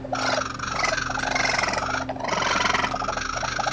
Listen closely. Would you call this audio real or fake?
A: real